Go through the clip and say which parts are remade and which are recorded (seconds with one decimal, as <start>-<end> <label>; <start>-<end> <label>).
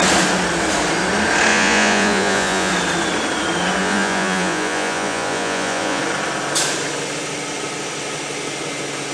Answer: 0.0-1.5 recorded; 1.5-2.7 remade; 2.7-3.8 recorded; 3.8-6.0 remade; 6.0-9.1 recorded